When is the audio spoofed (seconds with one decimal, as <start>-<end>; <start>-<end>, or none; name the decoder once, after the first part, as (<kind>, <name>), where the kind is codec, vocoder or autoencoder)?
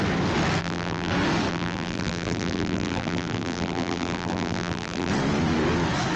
0.6-1.1 (vocoder, BigVGAN v2); 1.5-5.1